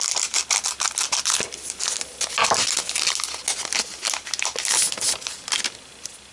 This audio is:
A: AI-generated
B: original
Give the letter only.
B